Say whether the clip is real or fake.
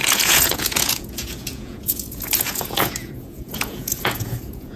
fake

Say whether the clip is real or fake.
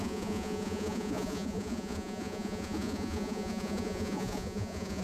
fake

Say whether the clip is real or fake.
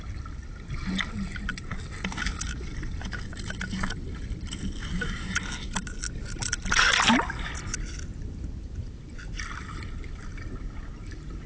real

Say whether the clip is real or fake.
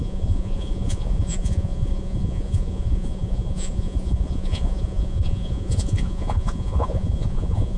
fake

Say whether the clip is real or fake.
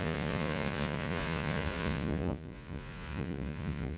fake